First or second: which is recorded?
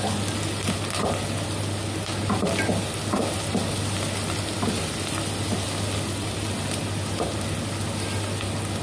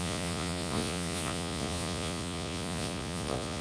first